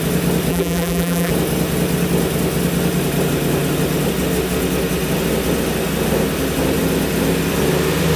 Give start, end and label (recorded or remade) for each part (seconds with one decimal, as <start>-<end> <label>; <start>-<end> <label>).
0.0-0.5 recorded; 0.5-1.3 remade; 1.3-8.2 recorded